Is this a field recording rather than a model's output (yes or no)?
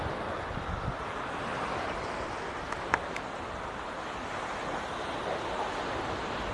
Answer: yes